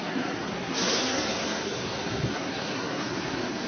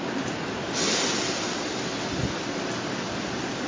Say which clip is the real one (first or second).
second